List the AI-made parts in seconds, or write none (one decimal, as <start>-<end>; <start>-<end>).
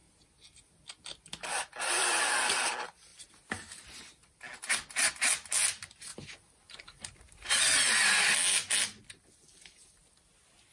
none